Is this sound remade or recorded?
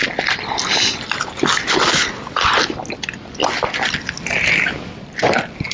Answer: recorded